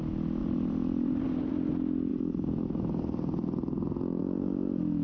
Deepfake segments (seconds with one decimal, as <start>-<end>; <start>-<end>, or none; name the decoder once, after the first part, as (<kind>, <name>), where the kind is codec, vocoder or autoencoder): 0.4-1.5 (vocoder, BigVGAN v2)